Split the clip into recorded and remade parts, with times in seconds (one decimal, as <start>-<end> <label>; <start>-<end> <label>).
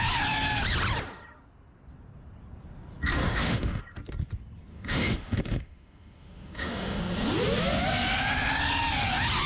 0.0-3.2 recorded; 3.2-3.8 remade; 3.8-4.7 recorded; 4.7-7.0 remade; 7.0-9.5 recorded